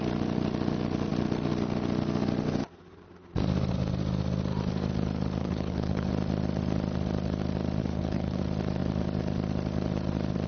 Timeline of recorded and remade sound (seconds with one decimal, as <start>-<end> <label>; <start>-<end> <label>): 0.0-5.4 recorded; 5.4-6.1 remade; 6.1-7.8 recorded; 7.8-8.4 remade; 8.4-10.5 recorded

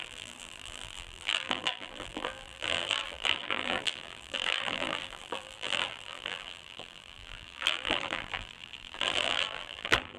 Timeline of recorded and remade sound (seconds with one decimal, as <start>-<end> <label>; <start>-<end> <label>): 0.0-10.2 remade

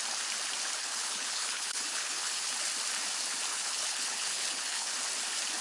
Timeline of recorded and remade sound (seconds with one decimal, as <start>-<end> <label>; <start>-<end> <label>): 0.0-0.8 recorded; 0.8-2.5 remade; 2.5-3.5 recorded; 3.5-4.9 remade; 4.9-5.6 recorded